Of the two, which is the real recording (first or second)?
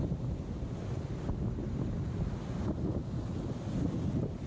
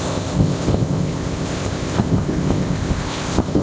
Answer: first